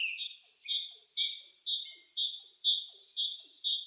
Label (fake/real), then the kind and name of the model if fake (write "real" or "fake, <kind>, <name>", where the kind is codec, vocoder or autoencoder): real